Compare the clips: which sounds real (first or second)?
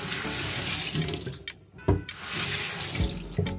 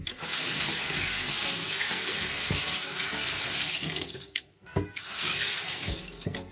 first